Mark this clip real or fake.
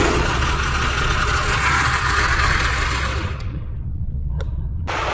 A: fake